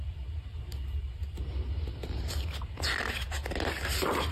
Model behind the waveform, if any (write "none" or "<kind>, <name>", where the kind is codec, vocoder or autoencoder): none